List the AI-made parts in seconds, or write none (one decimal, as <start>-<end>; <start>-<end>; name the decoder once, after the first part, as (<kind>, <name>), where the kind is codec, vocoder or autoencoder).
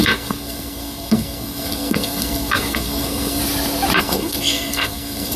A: 0.0-3.4 (codec, SNAC); 4.0-5.4